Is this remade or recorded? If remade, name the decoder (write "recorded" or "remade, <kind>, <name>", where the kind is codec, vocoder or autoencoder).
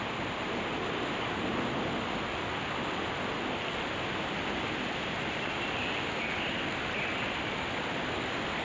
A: recorded